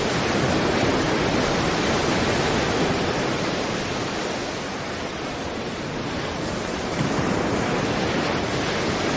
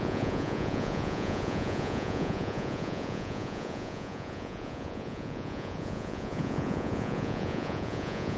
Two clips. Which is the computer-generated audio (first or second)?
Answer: second